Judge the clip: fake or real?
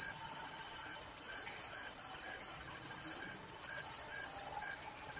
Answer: real